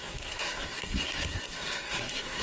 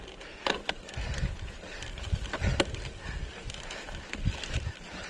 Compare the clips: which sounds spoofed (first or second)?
first